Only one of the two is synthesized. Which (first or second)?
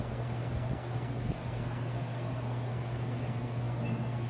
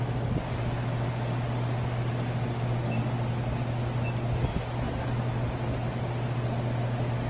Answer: first